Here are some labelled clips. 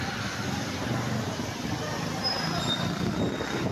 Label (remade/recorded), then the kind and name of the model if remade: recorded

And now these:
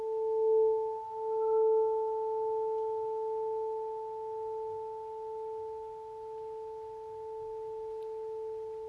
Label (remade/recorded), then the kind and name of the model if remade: recorded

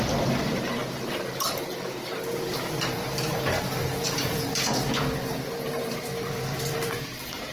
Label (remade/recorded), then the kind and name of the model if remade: remade, vocoder, BigVGAN v2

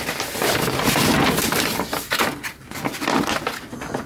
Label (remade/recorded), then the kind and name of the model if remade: recorded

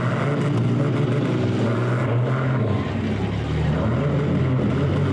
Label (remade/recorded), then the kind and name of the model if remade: recorded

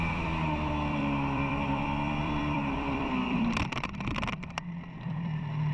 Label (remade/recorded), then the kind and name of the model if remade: remade, vocoder, BigVGAN v2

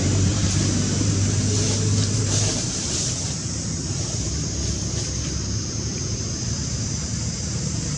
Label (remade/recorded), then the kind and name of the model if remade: remade, vocoder, BigVGAN v2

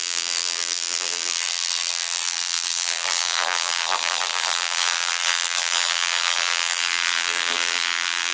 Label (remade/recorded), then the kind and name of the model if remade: remade, vocoder, BigVGAN v2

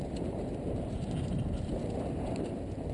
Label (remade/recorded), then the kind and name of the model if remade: remade, vocoder, BigVGAN v2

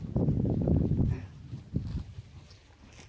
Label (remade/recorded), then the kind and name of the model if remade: recorded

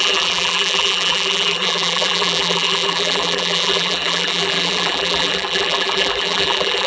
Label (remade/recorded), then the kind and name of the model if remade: remade, vocoder, BigVGAN v2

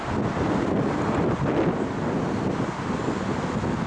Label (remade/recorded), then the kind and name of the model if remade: recorded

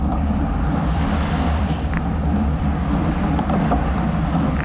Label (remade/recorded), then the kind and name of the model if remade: remade, vocoder, BigVGAN v2